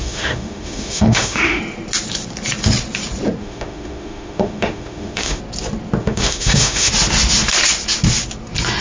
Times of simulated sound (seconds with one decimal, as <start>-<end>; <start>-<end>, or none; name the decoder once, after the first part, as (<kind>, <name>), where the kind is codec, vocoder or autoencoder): 0.0-1.6 (autoencoder, DAC-VAE); 3.4-5.4; 6.0-6.9